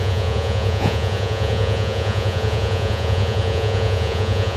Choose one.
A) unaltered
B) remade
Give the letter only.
B